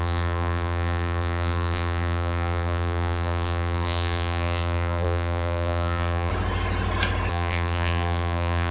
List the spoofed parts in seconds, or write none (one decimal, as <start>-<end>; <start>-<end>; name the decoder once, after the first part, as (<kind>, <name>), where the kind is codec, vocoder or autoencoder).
0.0-6.3 (vocoder, BigVGAN v2); 7.3-8.7